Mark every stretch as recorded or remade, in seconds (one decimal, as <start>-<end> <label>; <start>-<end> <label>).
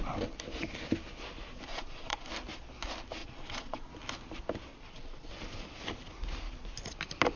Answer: 0.0-1.7 recorded; 1.7-2.3 remade; 2.3-3.2 recorded; 3.2-3.9 remade; 3.9-4.7 recorded; 4.7-5.3 remade; 5.3-7.4 recorded